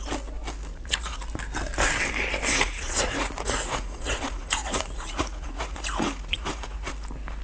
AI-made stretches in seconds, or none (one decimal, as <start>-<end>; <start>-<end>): 0.7-1.2; 2.5-6.9